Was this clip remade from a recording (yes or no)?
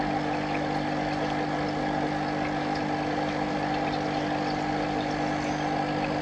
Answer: no